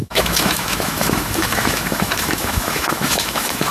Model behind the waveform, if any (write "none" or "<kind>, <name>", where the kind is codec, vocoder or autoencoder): autoencoder, DAC-VAE